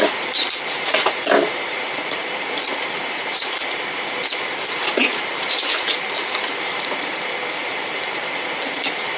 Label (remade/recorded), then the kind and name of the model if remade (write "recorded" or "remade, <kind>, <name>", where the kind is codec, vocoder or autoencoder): remade, vocoder, BigVGAN v2